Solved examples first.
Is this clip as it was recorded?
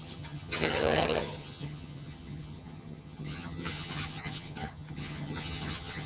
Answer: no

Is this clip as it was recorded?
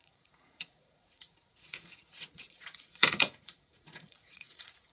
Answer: no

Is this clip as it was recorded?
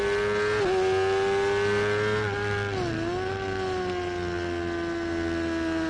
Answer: yes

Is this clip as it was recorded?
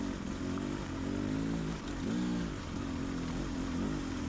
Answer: yes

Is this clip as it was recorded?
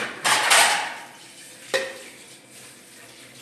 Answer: yes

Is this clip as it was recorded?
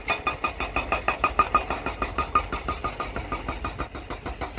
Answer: yes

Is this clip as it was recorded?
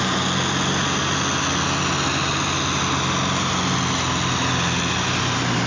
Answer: yes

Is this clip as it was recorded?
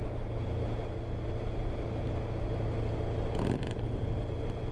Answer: yes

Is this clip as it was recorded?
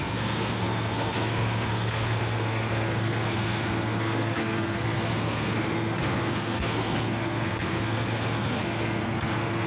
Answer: no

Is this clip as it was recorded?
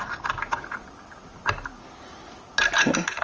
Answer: yes